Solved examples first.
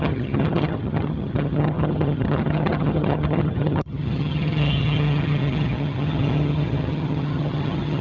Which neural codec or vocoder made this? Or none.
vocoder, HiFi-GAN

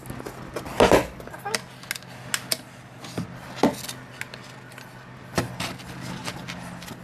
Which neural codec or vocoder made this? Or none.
none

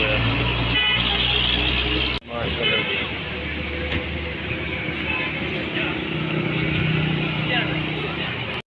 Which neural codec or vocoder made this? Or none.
none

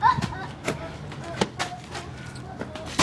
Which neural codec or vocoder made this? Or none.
none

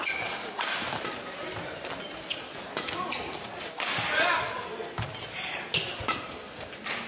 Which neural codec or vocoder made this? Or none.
none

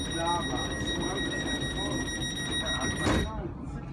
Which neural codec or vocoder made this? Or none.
none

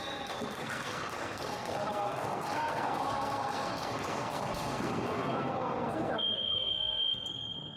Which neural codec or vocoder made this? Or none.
codec, SNAC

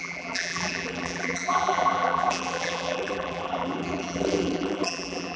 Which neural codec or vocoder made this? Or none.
vocoder, BigVGAN v2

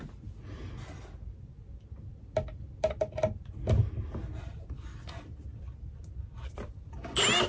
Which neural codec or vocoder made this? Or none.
none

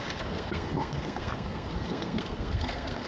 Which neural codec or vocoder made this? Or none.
codec, SNAC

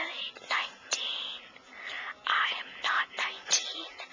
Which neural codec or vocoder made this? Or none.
none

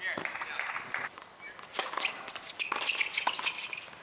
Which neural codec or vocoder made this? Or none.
none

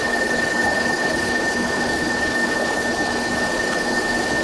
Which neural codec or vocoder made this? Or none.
codec, HILCodec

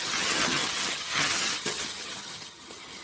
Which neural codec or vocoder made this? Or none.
vocoder, HiFi-GAN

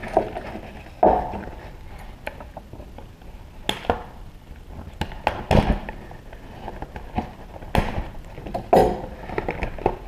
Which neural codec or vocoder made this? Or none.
none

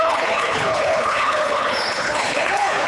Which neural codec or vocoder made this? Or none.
codec, HILCodec